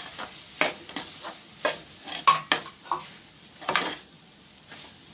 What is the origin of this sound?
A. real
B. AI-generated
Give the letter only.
A